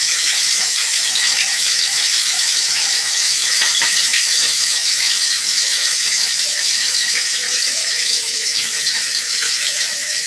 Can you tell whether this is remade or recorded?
remade